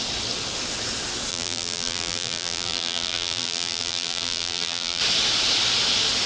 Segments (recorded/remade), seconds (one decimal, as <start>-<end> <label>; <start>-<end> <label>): 0.0-1.3 recorded; 1.3-5.0 remade; 5.0-6.3 recorded